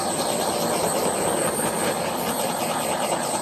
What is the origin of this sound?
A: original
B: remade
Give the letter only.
A